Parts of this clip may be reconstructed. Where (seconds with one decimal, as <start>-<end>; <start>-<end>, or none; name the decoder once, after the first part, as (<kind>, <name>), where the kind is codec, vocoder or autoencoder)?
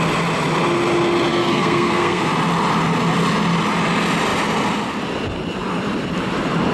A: 1.3-2.2 (codec, SNAC)